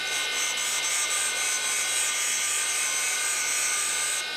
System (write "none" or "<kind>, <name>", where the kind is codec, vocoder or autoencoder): none